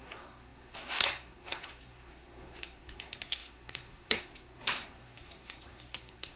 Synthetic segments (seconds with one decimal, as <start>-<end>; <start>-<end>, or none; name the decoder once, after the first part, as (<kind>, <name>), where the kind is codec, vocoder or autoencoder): 0.0-6.4 (codec, SNAC)